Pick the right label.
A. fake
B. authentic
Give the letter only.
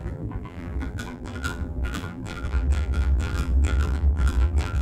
A